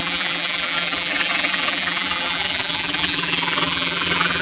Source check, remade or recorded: remade